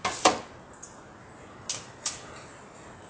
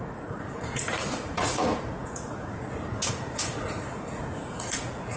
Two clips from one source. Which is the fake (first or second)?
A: second